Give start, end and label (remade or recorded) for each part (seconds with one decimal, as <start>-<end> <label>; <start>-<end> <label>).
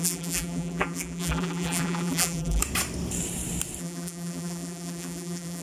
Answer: 0.0-2.6 remade; 2.6-3.8 recorded; 3.8-5.6 remade